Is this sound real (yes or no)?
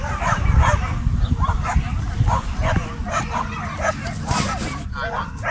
yes